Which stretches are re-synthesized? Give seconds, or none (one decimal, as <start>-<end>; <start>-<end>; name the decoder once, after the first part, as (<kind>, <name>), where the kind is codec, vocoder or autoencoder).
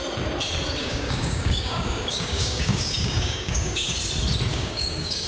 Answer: 0.8-4.0 (codec, DAC); 4.5-5.3